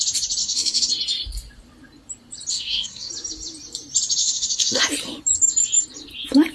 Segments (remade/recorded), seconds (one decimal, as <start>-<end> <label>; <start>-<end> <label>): 0.0-0.4 recorded; 0.4-0.9 remade; 0.9-2.5 recorded; 2.5-3.1 remade; 3.1-4.2 recorded; 4.2-4.8 remade; 4.8-6.5 recorded